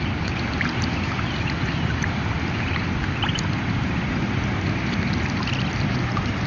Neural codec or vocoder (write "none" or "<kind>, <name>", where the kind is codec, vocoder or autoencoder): vocoder, BigVGAN v2